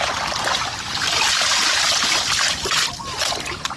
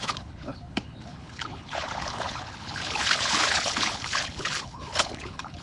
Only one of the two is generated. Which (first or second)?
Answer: second